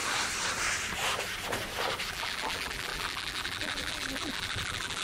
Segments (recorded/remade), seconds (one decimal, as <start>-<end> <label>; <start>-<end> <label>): 0.0-2.1 recorded; 2.1-5.0 remade

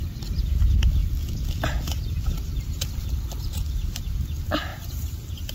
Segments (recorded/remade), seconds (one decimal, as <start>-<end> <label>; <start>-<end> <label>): 0.0-4.7 recorded; 4.7-5.5 remade

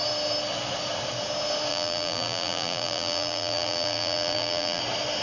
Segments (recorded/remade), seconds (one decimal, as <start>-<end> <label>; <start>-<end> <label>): 0.0-1.7 recorded; 1.7-4.8 remade; 4.8-5.2 recorded

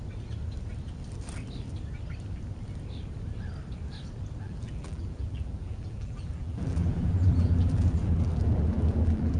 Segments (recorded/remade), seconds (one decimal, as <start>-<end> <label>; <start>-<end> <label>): 0.0-4.4 recorded; 4.4-9.4 remade

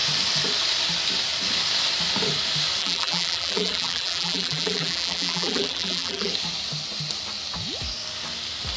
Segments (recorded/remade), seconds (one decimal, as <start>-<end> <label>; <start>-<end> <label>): 0.0-2.8 recorded; 2.8-6.3 remade; 6.3-8.8 recorded

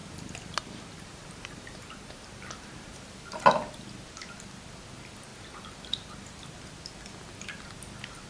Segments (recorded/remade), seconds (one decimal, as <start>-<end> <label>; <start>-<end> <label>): 0.0-3.0 remade; 3.0-5.3 recorded; 5.3-6.1 remade; 6.1-8.3 recorded

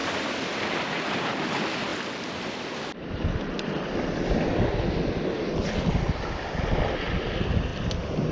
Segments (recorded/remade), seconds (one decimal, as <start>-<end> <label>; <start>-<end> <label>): 0.0-1.0 remade; 1.0-8.3 recorded